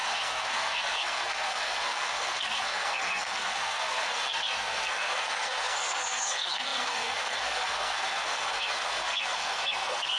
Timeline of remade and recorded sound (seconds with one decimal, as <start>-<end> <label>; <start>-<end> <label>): 0.0-10.2 remade